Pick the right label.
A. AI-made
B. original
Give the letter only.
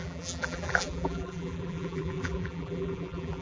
A